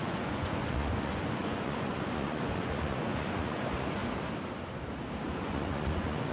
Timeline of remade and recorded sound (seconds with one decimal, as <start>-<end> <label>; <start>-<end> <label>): 0.0-4.0 remade; 4.0-5.4 recorded; 5.4-6.3 remade

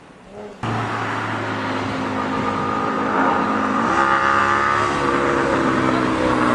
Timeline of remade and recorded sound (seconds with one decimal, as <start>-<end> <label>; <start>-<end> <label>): 0.0-6.5 recorded

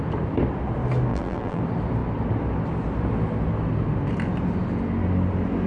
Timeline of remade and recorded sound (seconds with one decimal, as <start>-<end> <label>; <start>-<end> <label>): 0.0-1.1 recorded; 1.1-1.6 remade; 1.6-5.7 recorded

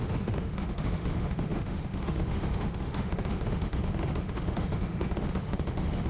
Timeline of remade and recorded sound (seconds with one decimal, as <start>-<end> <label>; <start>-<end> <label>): 0.0-6.1 remade

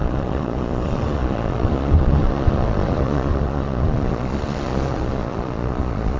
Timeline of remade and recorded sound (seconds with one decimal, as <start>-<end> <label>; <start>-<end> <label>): 0.0-6.2 remade